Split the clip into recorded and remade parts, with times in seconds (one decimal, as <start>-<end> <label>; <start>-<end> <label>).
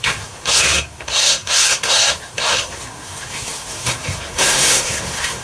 0.0-5.4 remade